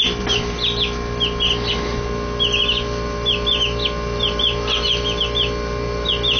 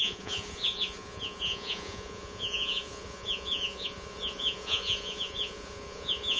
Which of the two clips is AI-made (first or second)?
second